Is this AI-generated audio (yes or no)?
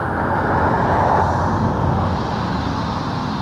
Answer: no